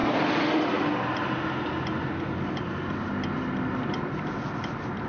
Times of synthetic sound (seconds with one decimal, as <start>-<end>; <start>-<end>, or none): none